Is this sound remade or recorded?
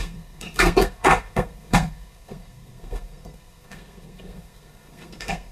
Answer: remade